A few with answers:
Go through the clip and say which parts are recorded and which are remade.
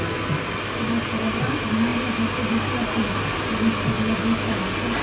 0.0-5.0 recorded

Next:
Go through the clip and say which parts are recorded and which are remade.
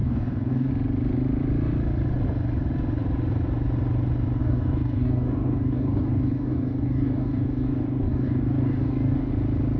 0.0-0.7 remade; 0.7-4.4 recorded; 4.4-9.3 remade; 9.3-9.8 recorded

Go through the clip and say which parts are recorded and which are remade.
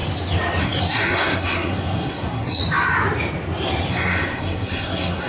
0.0-0.6 recorded; 0.6-2.6 remade; 2.6-3.9 recorded; 3.9-5.3 remade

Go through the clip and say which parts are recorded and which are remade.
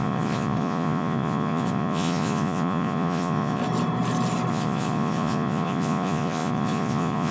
0.0-3.6 remade; 3.6-4.5 recorded; 4.5-7.3 remade